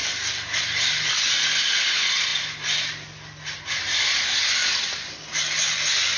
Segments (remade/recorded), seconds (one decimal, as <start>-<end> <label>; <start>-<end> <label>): 0.0-6.2 recorded